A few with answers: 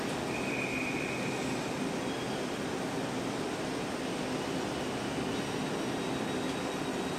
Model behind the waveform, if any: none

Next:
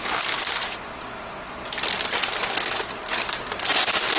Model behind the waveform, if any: none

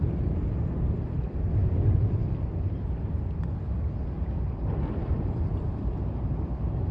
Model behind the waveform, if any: none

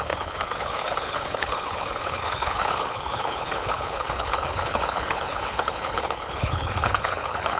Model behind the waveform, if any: codec, HILCodec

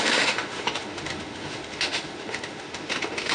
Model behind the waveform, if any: autoencoder, DAC-VAE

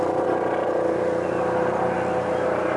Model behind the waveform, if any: none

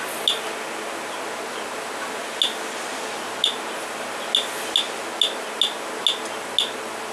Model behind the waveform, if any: none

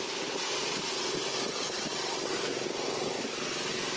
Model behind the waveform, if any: none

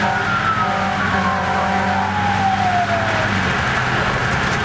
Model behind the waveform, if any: none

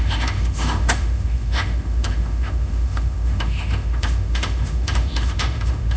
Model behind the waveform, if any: autoencoder, DAC-VAE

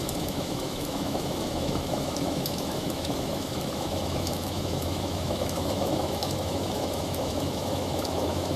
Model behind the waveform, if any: autoencoder, DAC-VAE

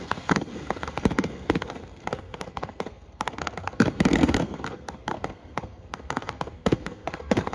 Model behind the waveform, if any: codec, SNAC